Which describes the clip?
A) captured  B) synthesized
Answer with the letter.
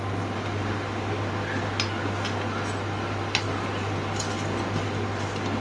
A